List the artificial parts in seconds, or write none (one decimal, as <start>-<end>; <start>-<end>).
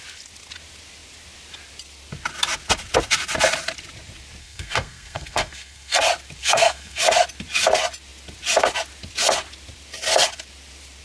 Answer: 4.4-6.0; 6.4-7.0